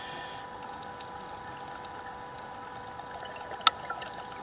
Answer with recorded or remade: recorded